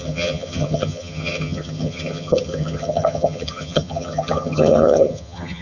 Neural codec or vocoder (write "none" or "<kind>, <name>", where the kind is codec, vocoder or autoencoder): vocoder, HiFi-GAN